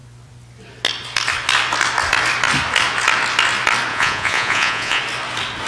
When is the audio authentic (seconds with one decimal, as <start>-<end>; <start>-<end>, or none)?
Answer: 0.0-3.9; 5.0-5.7